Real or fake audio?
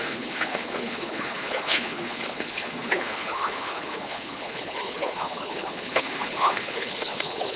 fake